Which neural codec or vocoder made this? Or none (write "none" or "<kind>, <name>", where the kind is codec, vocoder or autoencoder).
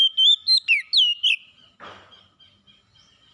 none